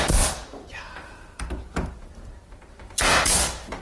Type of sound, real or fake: fake